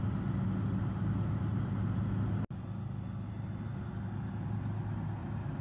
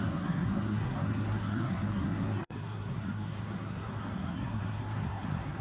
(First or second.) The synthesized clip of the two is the second